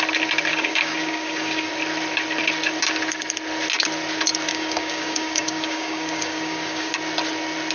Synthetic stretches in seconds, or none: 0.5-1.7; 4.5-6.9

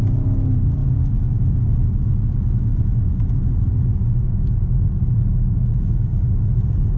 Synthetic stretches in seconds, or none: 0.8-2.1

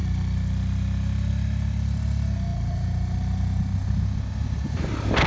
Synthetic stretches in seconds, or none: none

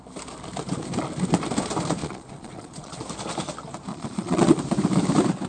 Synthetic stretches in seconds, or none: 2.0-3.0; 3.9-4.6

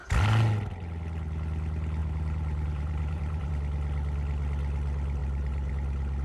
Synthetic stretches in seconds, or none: 2.0-3.5; 5.2-5.7

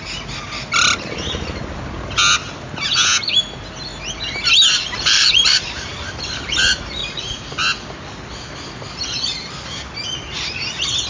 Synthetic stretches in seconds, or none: 7.0-7.5

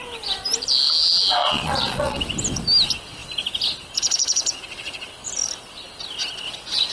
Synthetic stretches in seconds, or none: 1.4-2.2